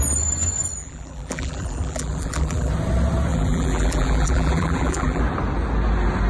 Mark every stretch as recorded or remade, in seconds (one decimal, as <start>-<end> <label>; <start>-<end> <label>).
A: 0.0-0.8 recorded; 0.8-2.7 remade; 2.7-3.3 recorded; 3.3-5.2 remade; 5.2-6.3 recorded